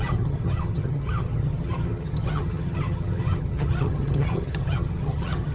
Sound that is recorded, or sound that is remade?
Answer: remade